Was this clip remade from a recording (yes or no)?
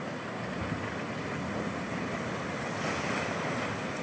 no